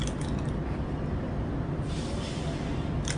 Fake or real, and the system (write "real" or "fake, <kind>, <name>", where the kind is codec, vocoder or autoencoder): real